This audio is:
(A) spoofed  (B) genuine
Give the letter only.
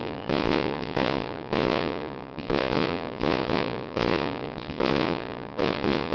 A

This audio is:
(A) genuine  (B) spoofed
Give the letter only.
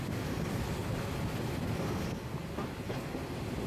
A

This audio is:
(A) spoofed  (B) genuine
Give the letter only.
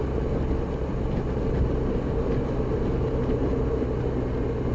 B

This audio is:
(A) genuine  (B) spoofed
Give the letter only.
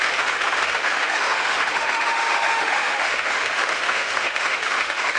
B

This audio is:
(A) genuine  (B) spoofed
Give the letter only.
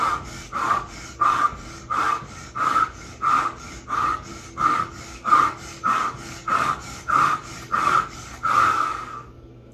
B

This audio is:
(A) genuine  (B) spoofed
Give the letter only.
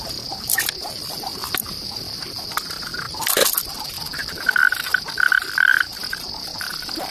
B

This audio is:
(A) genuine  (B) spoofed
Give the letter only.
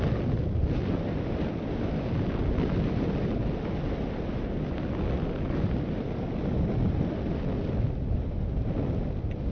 A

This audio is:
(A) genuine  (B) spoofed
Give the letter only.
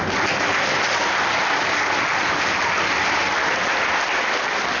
A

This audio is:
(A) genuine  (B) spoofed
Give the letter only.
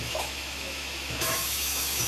B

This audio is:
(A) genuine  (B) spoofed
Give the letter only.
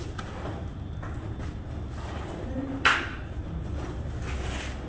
A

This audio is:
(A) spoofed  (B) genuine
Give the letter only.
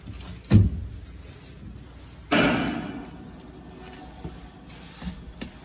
B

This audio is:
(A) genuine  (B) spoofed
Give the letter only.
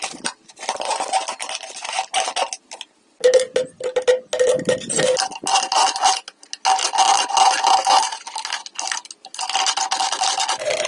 A